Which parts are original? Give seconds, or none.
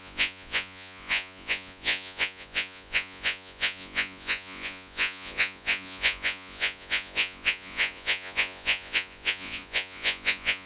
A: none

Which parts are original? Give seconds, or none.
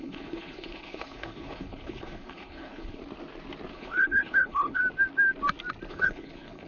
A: 3.0-3.7; 4.8-5.9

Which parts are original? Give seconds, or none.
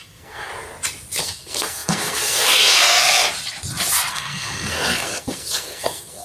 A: 0.5-1.2; 3.2-4.1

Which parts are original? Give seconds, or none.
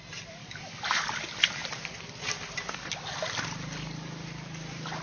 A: 0.0-0.4; 1.0-5.0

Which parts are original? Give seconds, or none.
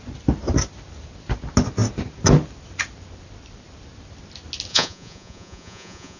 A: 0.0-4.7